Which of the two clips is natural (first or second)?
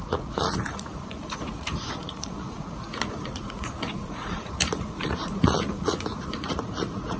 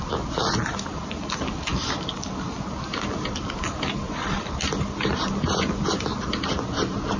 second